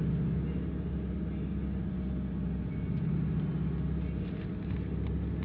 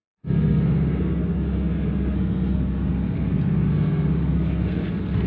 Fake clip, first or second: second